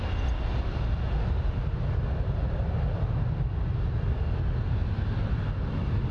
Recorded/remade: recorded